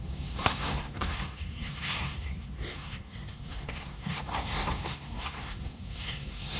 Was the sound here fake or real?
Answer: fake